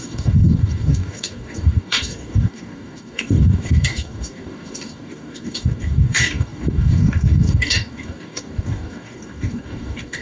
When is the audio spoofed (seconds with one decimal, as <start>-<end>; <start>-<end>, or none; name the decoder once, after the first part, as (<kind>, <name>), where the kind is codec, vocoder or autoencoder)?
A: 0.0-10.2 (codec, DAC)

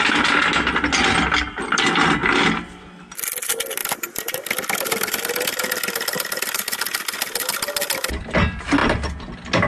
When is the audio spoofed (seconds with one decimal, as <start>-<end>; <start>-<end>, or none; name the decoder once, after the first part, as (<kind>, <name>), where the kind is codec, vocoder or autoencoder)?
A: none

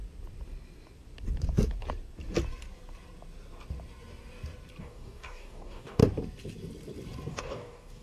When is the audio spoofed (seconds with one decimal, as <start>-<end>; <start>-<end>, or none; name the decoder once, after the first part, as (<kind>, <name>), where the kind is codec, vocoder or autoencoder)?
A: 4.8-6.0 (codec, DAC); 7.3-8.0

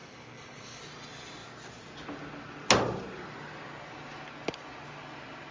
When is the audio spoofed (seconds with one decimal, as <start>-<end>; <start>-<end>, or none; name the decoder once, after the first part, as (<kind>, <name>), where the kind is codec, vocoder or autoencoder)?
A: 0.0-0.8 (codec, DAC)

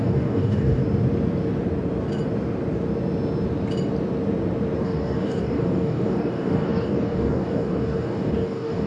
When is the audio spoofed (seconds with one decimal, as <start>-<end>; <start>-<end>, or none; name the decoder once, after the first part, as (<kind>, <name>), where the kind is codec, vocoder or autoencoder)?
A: 0.0-0.8 (codec, DAC); 4.8-8.9